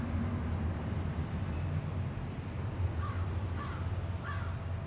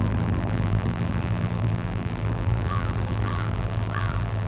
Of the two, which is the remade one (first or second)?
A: second